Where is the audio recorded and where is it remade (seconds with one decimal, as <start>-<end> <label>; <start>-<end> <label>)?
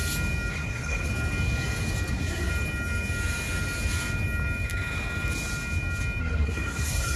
0.0-0.5 recorded; 0.5-1.1 remade; 1.1-2.1 recorded; 2.1-2.5 remade; 2.5-6.2 recorded; 6.2-7.2 remade